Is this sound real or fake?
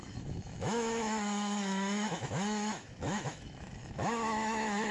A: fake